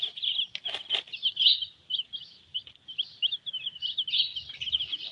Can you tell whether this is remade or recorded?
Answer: recorded